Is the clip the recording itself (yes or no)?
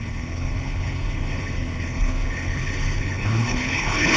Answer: no